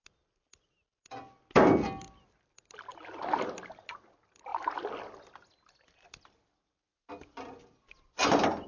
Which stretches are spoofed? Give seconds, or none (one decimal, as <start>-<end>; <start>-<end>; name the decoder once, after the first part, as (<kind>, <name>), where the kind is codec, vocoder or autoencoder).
none